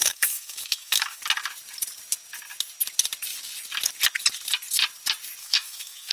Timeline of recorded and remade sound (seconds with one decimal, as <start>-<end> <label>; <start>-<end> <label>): 0.0-1.2 remade; 1.2-5.4 recorded; 5.4-6.1 remade